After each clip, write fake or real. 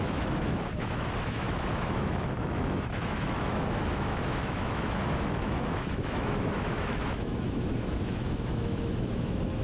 fake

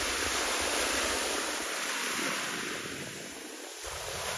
real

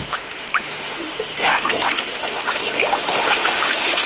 fake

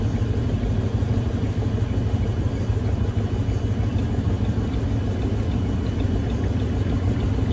real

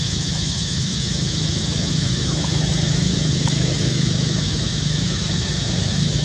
fake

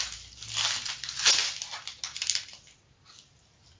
real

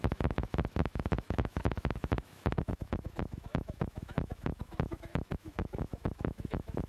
fake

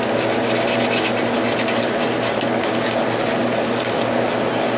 real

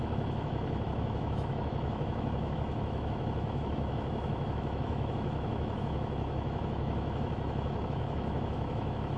fake